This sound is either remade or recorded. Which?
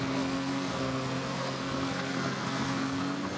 remade